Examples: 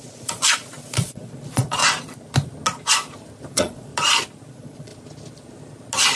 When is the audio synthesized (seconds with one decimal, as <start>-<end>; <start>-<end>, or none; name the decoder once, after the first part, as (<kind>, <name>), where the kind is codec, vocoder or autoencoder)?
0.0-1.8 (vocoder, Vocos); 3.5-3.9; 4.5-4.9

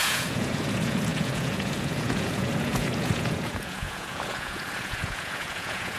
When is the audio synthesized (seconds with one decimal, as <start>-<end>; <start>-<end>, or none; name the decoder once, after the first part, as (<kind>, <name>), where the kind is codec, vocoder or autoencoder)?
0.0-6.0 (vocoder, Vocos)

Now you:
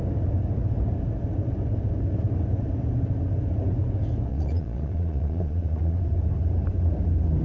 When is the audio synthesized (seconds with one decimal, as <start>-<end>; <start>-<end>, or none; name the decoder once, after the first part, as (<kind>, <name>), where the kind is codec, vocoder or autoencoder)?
4.3-6.0 (vocoder, Vocos)